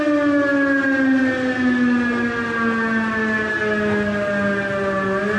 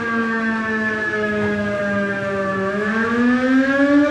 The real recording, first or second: first